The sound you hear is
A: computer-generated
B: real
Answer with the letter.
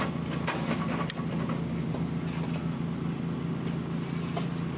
B